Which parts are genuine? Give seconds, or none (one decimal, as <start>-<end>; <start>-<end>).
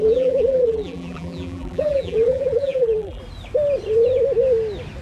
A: 3.2-5.0